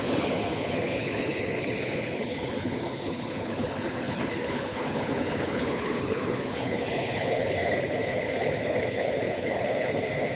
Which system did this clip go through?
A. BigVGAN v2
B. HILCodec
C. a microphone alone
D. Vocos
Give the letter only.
B